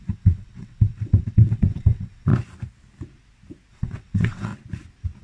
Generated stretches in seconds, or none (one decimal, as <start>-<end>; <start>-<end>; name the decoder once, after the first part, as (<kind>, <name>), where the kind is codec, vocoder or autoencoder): 0.0-2.3 (vocoder, WaveNeXt); 3.7-4.5